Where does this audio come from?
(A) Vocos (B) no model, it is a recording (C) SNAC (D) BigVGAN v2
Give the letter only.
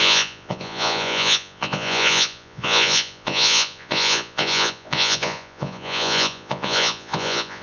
A